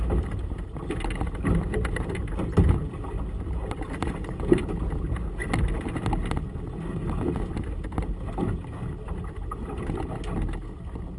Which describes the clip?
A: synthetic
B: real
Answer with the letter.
B